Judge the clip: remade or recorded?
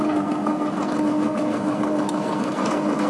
remade